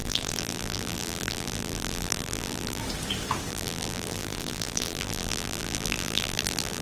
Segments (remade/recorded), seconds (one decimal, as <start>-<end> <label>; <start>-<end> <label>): 0.0-2.8 remade; 2.8-3.5 recorded; 3.5-6.8 remade